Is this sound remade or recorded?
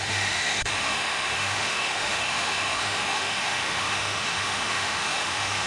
remade